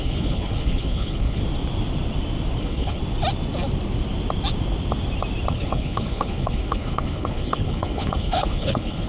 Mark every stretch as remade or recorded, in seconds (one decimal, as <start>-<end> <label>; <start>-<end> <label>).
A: 0.0-1.4 remade; 1.4-2.6 recorded; 2.6-3.0 remade; 3.0-5.5 recorded; 5.5-9.1 remade